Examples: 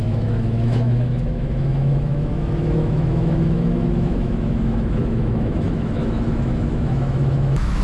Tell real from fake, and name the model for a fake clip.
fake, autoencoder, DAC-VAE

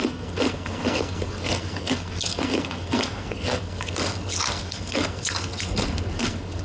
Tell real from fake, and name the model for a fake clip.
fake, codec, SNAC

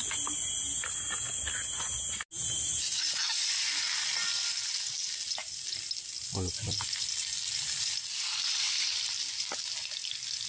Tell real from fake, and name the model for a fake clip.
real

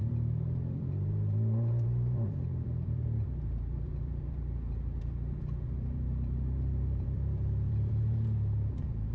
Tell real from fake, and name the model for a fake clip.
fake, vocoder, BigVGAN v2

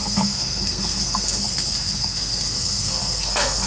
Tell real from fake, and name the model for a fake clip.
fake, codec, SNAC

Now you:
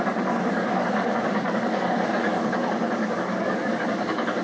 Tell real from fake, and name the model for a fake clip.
fake, codec, DAC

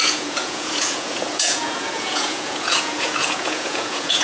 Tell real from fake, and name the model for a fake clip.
fake, vocoder, Vocos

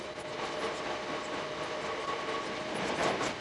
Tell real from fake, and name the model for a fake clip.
real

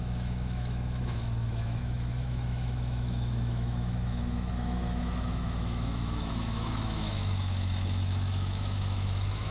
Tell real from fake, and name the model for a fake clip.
fake, autoencoder, DAC-VAE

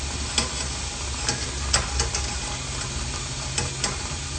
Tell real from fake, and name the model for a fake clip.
real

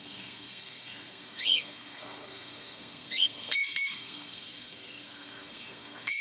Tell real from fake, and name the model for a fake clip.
fake, codec, SNAC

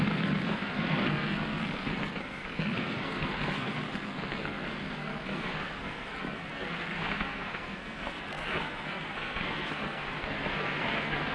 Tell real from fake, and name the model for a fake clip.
fake, codec, SNAC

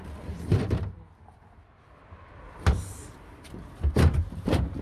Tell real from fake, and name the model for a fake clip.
fake, vocoder, BigVGAN v2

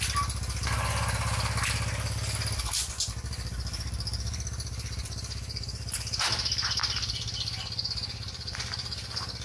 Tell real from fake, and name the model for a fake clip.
real